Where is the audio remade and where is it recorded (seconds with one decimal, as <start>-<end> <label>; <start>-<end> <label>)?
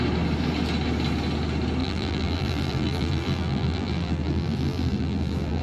0.0-1.8 recorded; 1.8-5.6 remade